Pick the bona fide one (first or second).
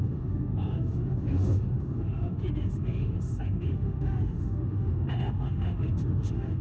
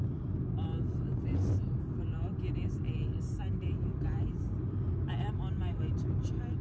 second